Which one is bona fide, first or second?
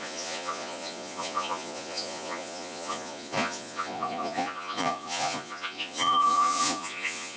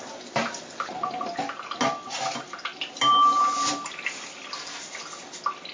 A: second